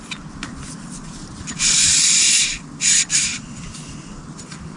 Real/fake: real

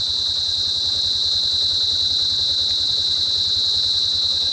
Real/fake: real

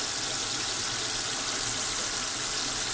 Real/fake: real